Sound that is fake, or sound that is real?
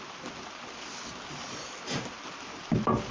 real